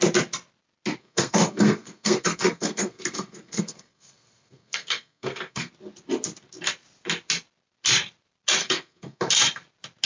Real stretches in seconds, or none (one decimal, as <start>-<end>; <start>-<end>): 0.0-1.0; 5.7-8.6; 9.2-10.1